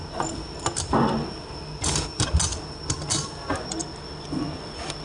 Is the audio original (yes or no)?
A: yes